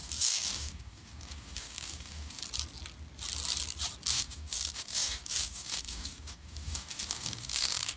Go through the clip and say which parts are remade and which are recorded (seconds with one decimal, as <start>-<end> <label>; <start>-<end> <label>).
0.0-2.4 remade; 2.4-4.1 recorded; 4.1-8.0 remade